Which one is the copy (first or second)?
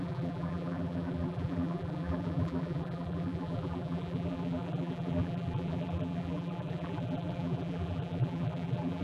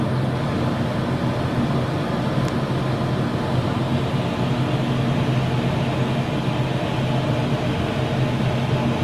first